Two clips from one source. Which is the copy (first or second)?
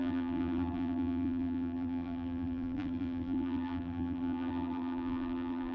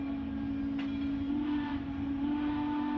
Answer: first